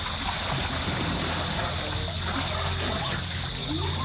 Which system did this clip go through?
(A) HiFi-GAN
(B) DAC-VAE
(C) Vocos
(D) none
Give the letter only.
D